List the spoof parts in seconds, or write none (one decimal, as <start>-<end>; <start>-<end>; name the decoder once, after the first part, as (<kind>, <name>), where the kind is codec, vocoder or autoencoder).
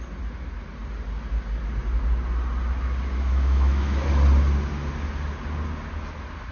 3.3-4.1 (autoencoder, DAC-VAE)